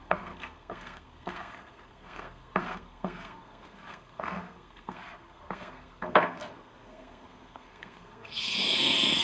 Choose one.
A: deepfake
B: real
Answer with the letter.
A